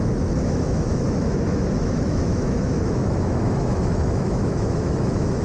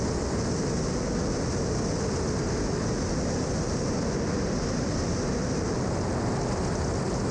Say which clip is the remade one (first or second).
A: first